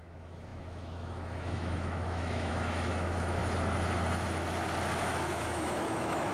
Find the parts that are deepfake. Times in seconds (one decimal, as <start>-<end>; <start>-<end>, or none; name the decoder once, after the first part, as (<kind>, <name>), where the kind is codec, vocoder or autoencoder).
0.0-3.4 (autoencoder, DAC-VAE); 5.0-6.3